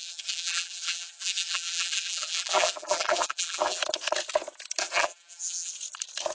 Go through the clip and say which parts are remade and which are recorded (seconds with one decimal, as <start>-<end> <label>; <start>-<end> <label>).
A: 0.0-3.8 remade; 3.8-4.8 recorded; 4.8-5.7 remade; 5.7-6.3 recorded